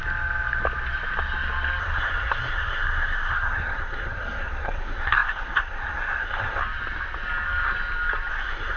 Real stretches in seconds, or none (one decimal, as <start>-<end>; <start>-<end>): 0.0-1.8; 6.6-8.3